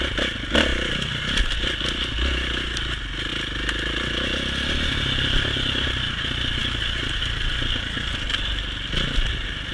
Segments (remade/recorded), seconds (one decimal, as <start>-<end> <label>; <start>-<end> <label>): 0.0-9.7 recorded